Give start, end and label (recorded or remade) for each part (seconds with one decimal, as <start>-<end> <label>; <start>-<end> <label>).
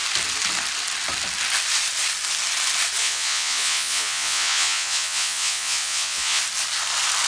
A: 0.0-3.0 recorded; 3.0-6.4 remade; 6.4-7.3 recorded